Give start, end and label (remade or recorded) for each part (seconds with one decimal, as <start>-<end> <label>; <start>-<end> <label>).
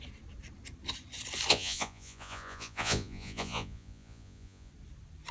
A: 0.0-1.5 recorded; 1.5-4.7 remade; 4.7-5.3 recorded